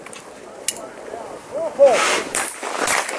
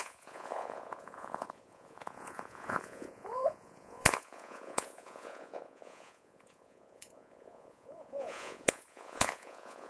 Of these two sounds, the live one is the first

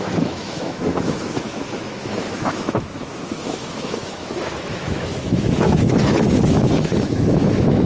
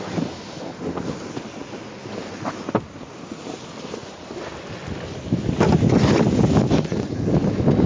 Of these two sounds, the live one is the second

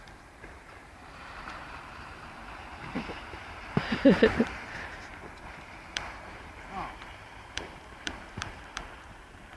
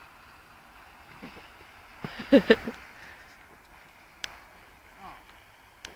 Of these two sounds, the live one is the second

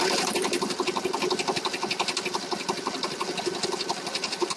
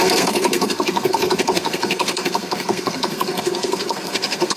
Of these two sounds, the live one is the first